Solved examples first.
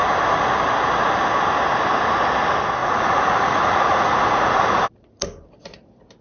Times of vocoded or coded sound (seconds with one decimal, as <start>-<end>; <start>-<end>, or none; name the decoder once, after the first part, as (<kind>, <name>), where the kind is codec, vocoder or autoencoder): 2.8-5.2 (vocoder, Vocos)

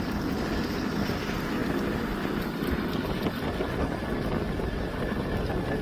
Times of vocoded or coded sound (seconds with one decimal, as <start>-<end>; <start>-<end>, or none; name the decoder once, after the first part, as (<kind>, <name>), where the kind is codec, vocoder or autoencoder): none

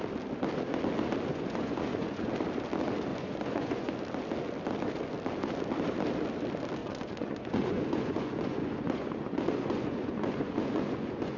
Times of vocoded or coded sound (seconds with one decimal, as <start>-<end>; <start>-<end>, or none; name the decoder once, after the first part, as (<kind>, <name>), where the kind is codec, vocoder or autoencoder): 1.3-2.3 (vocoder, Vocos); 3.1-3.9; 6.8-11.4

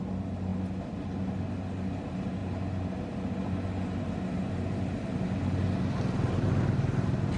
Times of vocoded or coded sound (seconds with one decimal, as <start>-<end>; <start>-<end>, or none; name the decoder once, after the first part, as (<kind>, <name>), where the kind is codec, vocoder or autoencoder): none

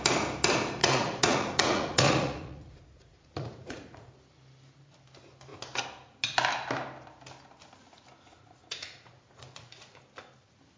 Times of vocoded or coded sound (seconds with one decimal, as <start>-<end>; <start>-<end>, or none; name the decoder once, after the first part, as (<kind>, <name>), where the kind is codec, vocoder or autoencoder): 0.8-4.1 (vocoder, Vocos); 8.3-10.0

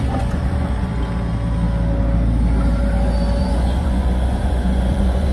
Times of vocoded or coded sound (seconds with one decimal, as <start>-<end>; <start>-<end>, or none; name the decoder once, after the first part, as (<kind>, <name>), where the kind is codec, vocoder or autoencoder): 0.0-0.9 (vocoder, Vocos); 3.4-5.3

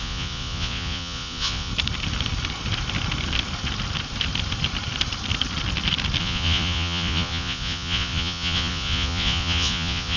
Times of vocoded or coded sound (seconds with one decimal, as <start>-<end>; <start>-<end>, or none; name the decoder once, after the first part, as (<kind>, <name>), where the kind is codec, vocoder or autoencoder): 0.0-1.7 (vocoder, Vocos); 6.2-10.2

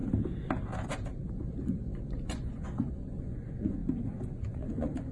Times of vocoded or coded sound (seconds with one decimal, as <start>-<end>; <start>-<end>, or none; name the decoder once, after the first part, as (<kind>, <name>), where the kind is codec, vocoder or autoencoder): 1.3-3.8 (vocoder, Vocos); 4.3-5.1